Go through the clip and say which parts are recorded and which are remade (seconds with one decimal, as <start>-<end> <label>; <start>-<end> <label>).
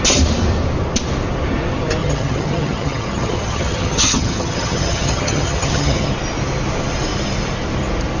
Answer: 0.0-2.0 recorded; 2.0-6.1 remade; 6.1-8.2 recorded